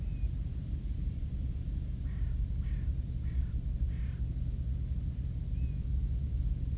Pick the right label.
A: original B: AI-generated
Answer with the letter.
A